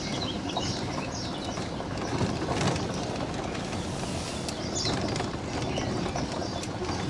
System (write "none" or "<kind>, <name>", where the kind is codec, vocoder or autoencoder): none